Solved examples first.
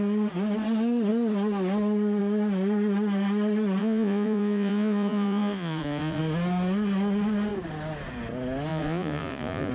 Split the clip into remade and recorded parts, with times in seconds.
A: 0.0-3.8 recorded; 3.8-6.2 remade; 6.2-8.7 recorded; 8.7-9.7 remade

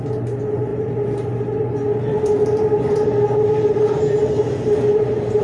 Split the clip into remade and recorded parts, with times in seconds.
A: 0.0-5.4 recorded

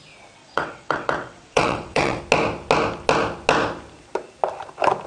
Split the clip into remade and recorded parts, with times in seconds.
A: 0.0-0.4 recorded; 0.4-2.2 remade; 2.2-5.1 recorded

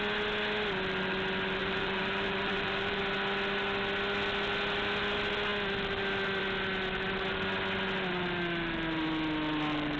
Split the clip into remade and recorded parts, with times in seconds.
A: 0.0-1.6 recorded; 1.6-3.0 remade; 3.0-10.0 recorded

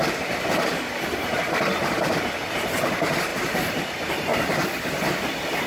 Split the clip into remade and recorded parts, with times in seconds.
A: 0.0-5.7 recorded